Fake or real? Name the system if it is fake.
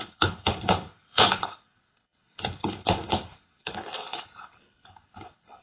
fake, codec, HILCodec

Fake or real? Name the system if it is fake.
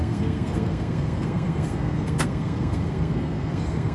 fake, codec, SNAC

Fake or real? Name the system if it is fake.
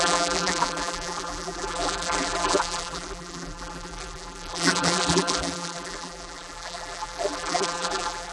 fake, vocoder, BigVGAN v2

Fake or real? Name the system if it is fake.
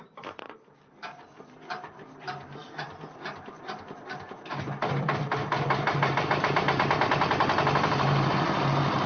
real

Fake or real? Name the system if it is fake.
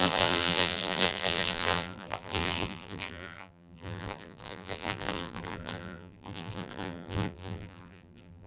fake, vocoder, BigVGAN v2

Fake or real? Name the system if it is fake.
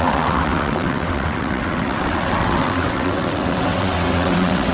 fake, vocoder, WaveNeXt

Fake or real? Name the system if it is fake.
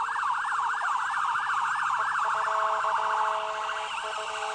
real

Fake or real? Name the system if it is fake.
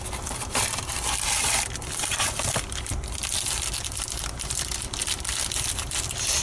fake, vocoder, BigVGAN v2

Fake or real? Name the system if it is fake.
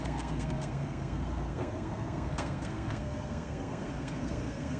fake, codec, SNAC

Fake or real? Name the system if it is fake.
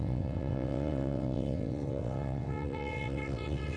fake, vocoder, WaveNeXt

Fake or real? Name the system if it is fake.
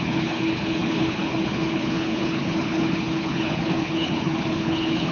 fake, codec, HILCodec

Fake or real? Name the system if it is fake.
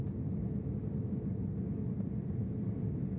real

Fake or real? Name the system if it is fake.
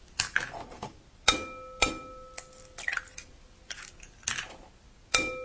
real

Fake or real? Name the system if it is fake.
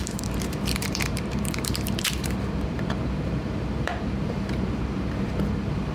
fake, vocoder, BigVGAN v2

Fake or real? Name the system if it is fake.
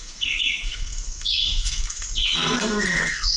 fake, codec, SNAC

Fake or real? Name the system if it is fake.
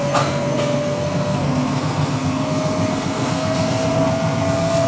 fake, codec, SNAC